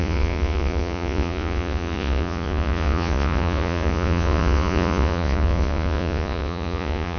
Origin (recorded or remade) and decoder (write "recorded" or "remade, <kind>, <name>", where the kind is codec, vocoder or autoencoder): remade, vocoder, Vocos